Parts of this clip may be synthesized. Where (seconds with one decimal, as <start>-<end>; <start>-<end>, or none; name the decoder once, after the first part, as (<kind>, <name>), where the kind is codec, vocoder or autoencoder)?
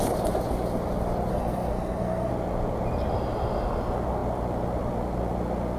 1.3-2.3 (codec, SNAC)